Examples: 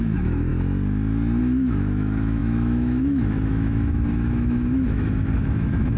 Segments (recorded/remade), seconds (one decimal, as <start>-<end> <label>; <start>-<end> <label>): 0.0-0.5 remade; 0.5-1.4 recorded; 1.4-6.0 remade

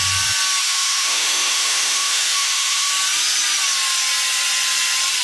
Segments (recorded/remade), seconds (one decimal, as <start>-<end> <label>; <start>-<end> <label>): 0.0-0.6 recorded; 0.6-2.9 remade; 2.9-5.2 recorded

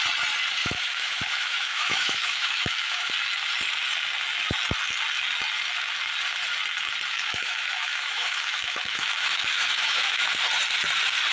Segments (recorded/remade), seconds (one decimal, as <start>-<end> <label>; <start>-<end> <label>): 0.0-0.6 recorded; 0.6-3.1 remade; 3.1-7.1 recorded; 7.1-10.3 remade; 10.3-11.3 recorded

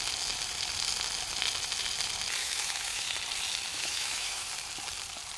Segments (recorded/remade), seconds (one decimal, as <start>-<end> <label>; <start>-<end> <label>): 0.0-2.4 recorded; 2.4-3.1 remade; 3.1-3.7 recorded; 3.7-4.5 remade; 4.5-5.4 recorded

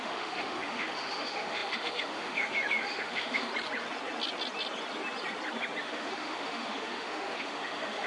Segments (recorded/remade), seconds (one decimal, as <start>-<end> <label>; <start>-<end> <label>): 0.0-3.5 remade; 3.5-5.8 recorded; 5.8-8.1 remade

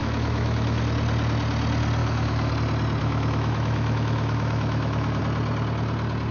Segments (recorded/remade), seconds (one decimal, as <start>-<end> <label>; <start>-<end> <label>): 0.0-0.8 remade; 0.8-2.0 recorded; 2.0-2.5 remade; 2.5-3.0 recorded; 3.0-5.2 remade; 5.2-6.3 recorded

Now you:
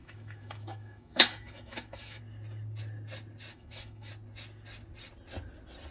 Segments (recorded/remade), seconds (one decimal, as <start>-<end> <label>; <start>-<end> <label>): 0.0-2.2 remade; 2.2-3.5 recorded; 3.5-4.1 remade; 4.1-5.9 recorded